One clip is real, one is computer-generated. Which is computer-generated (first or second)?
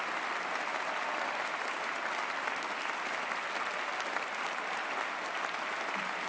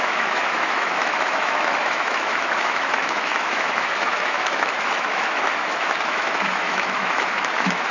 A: second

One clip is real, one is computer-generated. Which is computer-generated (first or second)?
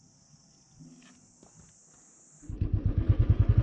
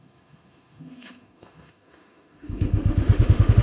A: second